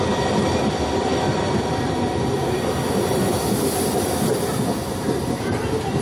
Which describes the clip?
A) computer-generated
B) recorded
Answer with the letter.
B